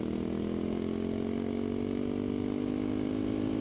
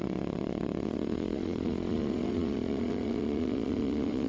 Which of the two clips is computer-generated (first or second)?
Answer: second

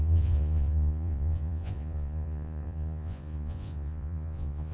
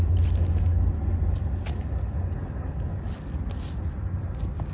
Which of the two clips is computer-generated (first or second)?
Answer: first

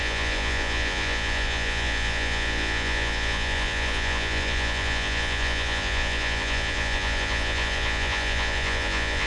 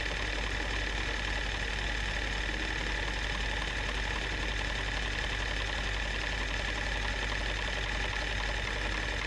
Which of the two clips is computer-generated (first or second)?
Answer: first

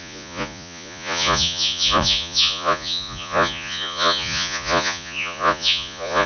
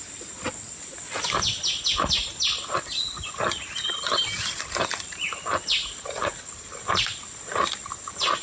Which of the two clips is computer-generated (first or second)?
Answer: first